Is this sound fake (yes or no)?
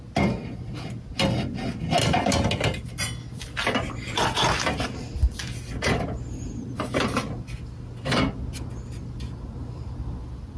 no